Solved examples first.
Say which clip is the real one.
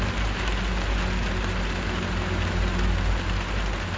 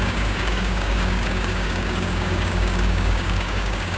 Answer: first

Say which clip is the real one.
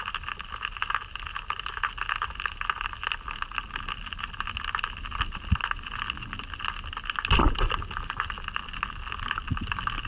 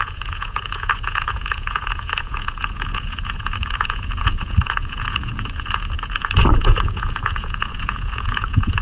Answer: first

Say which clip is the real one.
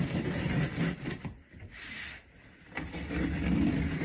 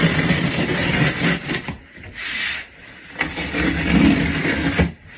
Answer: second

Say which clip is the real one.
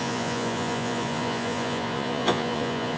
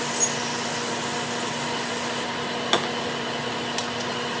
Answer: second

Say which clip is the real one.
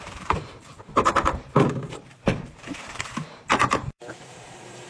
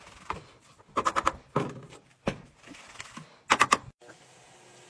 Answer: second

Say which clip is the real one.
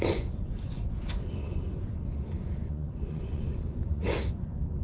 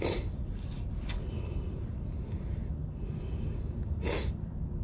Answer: second